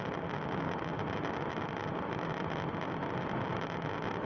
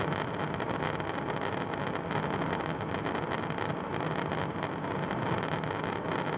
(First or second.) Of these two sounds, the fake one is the first